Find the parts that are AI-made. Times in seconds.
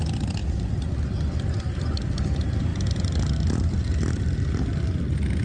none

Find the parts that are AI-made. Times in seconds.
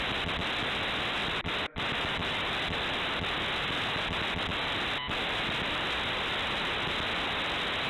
none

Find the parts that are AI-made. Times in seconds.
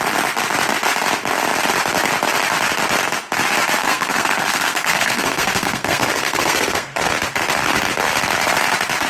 3.8-7.1 (codec, SNAC)